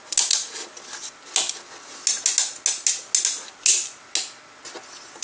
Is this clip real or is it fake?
real